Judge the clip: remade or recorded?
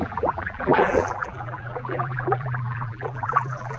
remade